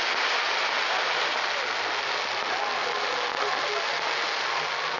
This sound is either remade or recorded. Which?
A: recorded